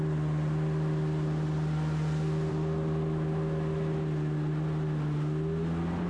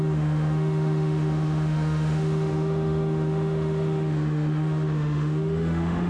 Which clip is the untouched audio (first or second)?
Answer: first